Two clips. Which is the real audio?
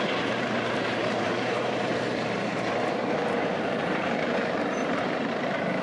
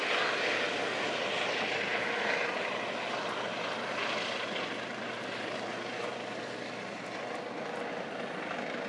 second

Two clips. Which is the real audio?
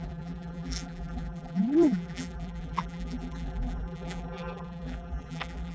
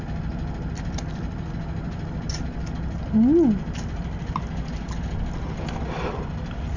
second